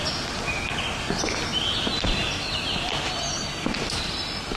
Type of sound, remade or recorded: recorded